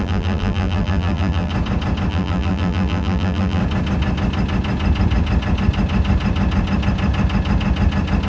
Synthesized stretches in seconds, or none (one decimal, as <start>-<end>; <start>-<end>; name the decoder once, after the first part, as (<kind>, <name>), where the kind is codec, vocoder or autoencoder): 0.0-1.5 (vocoder, BigVGAN v2); 2.1-3.6